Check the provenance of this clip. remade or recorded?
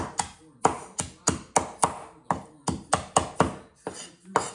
recorded